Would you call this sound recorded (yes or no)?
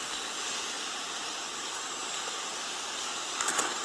yes